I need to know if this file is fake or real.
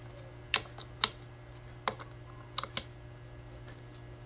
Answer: real